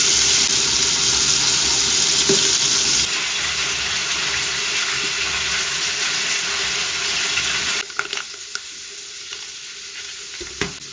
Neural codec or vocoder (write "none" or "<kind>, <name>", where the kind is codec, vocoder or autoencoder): none